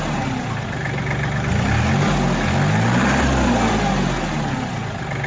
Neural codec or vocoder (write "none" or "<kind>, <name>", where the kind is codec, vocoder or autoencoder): none